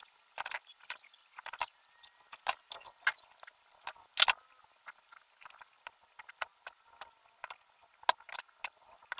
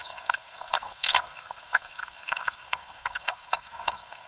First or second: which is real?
first